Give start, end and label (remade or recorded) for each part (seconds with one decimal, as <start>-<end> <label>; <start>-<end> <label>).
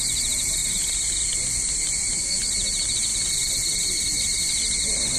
0.0-5.2 recorded